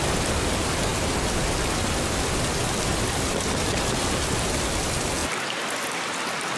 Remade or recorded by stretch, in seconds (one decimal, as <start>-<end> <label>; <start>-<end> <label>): 0.0-6.6 recorded